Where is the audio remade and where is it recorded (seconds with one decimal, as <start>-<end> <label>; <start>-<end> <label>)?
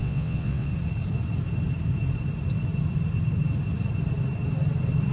0.0-0.7 remade; 0.7-5.1 recorded